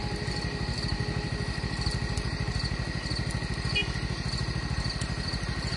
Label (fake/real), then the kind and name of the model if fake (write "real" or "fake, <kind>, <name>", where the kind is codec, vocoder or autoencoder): real